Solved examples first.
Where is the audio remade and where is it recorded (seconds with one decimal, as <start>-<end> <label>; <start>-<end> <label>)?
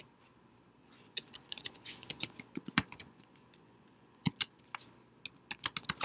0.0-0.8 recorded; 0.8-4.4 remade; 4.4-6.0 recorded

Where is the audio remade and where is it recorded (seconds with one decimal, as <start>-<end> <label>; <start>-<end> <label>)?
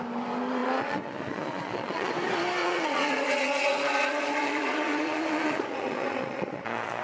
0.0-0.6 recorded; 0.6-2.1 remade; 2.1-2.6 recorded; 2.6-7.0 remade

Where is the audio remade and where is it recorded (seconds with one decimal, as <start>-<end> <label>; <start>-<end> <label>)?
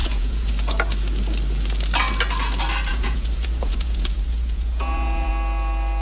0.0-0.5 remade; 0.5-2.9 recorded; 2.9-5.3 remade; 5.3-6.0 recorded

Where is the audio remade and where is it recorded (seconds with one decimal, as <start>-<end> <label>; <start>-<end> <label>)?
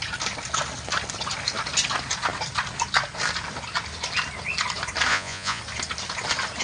0.0-5.1 recorded; 5.1-5.6 remade; 5.6-6.6 recorded